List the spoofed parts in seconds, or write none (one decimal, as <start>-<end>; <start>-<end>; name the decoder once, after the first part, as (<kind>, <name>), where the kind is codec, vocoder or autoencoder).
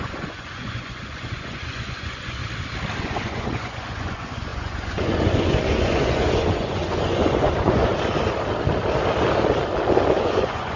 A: 0.0-2.4 (vocoder, Vocos); 3.0-7.9; 10.1-10.8